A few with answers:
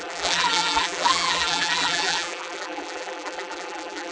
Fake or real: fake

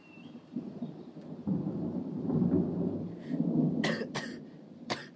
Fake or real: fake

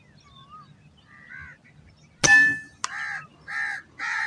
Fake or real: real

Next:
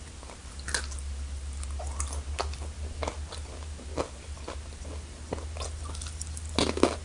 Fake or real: real